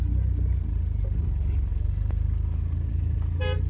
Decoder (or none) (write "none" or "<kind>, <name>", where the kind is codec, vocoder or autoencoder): none